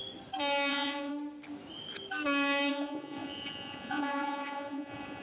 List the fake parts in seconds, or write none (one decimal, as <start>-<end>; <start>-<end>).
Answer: 0.7-1.1; 2.7-5.2